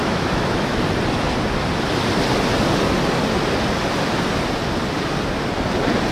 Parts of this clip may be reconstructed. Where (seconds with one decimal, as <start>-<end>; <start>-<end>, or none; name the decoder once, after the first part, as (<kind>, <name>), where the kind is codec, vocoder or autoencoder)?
0.0-0.8 (autoencoder, DAC-VAE)